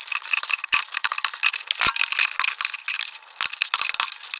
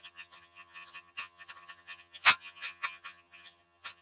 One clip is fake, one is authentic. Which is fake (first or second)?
second